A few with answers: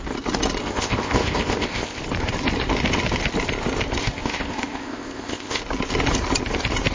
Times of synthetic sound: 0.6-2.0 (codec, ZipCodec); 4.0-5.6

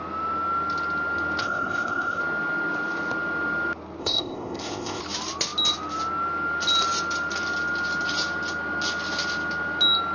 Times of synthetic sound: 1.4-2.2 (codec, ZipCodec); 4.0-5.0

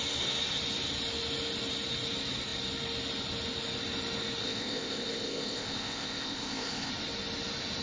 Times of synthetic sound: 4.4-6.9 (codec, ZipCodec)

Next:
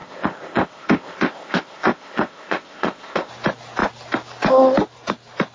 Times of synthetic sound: 0.0-3.3 (codec, ZipCodec)

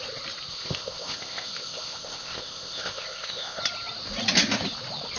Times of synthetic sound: 0.5-3.6 (codec, ZipCodec)

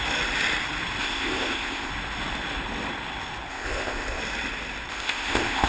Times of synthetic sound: 1.0-1.9 (codec, ZipCodec); 3.5-4.2; 4.9-5.7

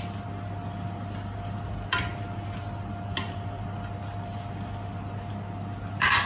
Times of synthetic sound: none